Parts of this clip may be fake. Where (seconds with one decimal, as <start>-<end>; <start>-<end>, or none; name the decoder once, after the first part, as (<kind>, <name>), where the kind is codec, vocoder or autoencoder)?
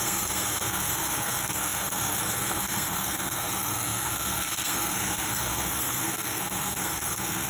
0.0-7.5 (codec, SNAC)